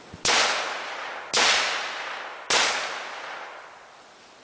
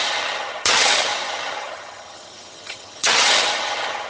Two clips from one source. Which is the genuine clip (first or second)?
first